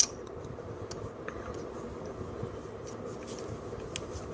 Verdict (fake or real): real